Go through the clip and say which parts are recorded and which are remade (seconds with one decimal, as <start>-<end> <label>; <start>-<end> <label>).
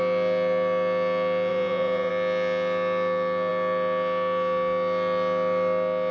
0.0-1.5 recorded; 1.5-2.1 remade; 2.1-6.1 recorded